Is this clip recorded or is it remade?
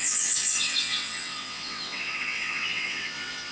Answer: remade